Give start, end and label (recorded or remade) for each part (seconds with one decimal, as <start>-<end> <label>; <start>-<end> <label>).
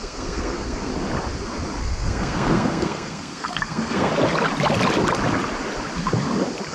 0.0-0.9 remade; 0.9-1.8 recorded; 1.8-4.1 remade; 4.1-6.7 recorded